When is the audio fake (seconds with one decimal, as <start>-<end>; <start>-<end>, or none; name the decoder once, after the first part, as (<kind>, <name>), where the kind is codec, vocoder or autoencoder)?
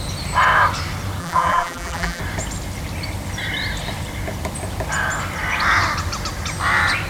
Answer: 1.2-2.2 (vocoder, BigVGAN v2)